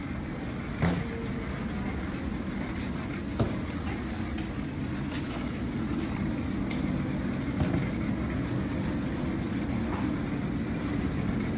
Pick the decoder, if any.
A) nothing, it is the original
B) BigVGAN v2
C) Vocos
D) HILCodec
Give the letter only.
A